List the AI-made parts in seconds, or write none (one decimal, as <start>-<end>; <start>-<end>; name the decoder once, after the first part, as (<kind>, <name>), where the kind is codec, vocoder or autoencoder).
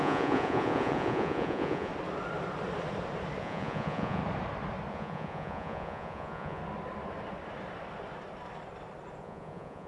0.0-1.9 (vocoder, Vocos); 3.4-4.2; 4.9-6.6; 9.2-9.9